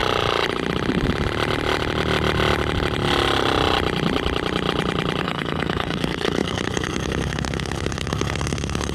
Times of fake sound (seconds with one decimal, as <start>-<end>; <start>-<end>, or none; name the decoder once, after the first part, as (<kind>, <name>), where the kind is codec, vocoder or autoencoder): 5.2-8.9 (codec, SNAC)